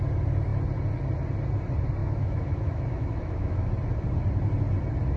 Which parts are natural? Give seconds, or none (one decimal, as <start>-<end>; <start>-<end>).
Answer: 0.0-2.0; 3.7-5.2